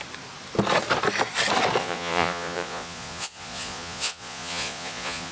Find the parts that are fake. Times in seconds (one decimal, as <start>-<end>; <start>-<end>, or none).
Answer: 1.8-5.3